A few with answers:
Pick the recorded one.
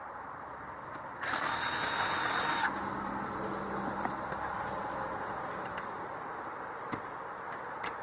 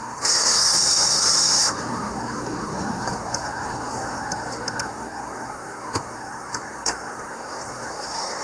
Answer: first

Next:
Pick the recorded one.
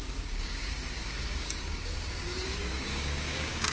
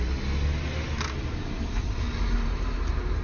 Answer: second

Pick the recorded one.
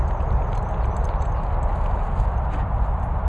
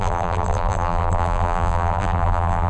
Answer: first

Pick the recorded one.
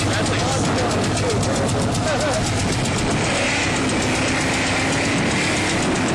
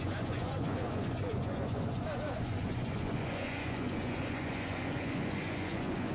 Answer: first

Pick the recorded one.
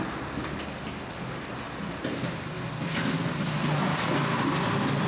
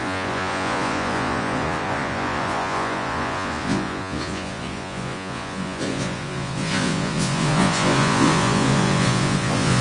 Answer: first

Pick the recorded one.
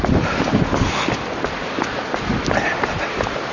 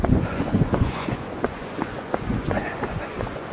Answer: first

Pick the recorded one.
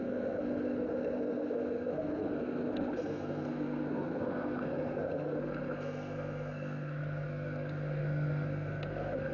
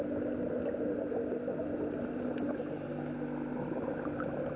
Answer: second